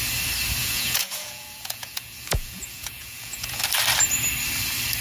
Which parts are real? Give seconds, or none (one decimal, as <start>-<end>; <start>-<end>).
0.0-0.6; 3.6-5.0